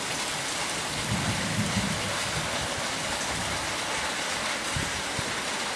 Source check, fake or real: real